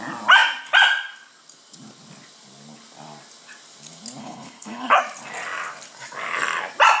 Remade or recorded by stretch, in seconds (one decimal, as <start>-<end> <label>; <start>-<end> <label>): 0.0-4.2 recorded; 4.2-5.0 remade; 5.0-7.0 recorded